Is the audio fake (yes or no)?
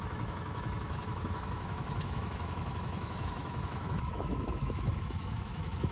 yes